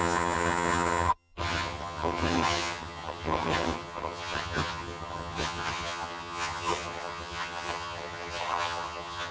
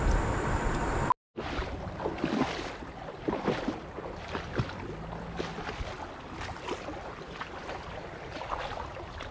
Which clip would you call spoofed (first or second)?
first